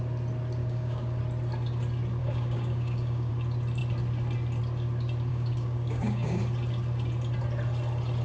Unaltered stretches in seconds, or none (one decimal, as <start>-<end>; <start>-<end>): 0.0-0.6; 1.2-2.2; 3.3-5.3; 6.4-8.2